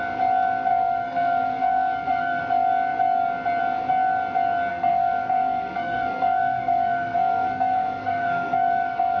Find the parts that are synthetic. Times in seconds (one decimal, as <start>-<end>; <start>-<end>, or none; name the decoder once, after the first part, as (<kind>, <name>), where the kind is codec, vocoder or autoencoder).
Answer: 0.7-2.4 (codec, SNAC); 4.7-9.2